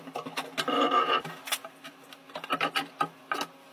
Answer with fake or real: real